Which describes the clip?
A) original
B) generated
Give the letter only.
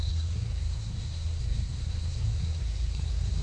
B